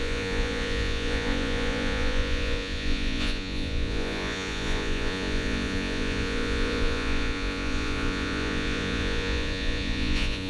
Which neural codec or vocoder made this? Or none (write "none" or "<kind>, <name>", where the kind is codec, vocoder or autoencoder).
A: vocoder, Vocos